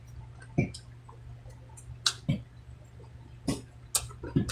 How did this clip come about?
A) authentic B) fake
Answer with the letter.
A